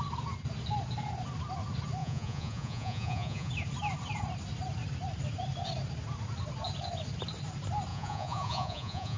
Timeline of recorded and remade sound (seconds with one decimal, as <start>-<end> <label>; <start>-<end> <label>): 0.0-2.0 recorded; 2.0-3.5 remade; 3.5-7.9 recorded; 7.9-9.2 remade